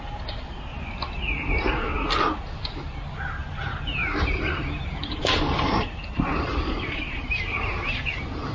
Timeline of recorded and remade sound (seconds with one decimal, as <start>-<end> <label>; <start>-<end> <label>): 0.0-0.7 remade; 0.7-1.5 recorded; 1.5-1.9 remade; 1.9-2.4 recorded; 2.4-8.5 remade

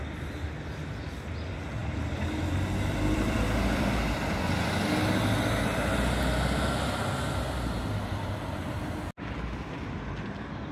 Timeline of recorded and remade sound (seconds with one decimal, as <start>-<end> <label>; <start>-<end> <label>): 0.0-1.8 recorded; 1.8-4.3 remade; 4.3-10.7 recorded

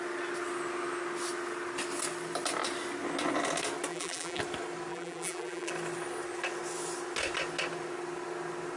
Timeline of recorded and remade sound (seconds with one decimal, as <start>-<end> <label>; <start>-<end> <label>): 0.0-3.9 recorded; 3.9-4.4 remade; 4.4-4.9 recorded; 4.9-5.7 remade; 5.7-8.8 recorded

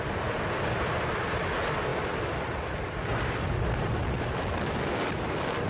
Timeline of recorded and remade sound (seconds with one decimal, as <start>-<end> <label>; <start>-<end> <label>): 0.0-1.9 recorded; 1.9-5.3 remade; 5.3-5.7 recorded

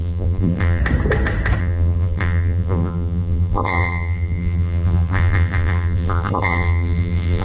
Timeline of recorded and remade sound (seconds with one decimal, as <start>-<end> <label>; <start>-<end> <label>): 0.0-0.8 remade; 0.8-1.6 recorded; 1.6-7.4 remade

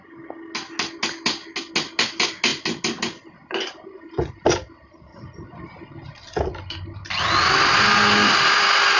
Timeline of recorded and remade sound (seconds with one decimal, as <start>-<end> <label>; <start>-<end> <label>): 0.0-9.0 recorded

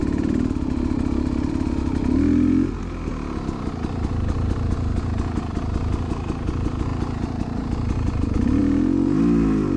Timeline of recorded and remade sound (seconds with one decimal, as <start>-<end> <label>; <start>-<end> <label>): 0.0-1.5 remade; 1.5-9.8 recorded